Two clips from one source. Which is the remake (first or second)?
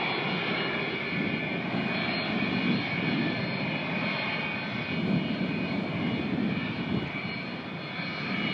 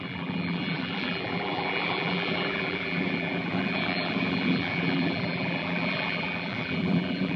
second